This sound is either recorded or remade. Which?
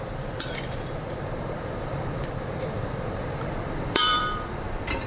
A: remade